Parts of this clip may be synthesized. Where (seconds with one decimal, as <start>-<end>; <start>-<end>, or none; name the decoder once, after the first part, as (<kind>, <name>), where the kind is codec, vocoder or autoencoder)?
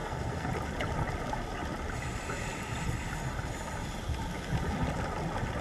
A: 0.0-0.5 (codec, SNAC)